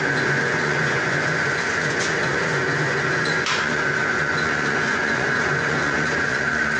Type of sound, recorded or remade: remade